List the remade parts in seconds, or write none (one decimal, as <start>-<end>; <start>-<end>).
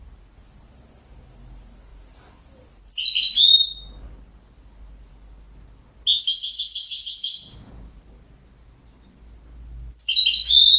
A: 6.1-8.0